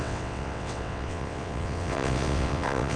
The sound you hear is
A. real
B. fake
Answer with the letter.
B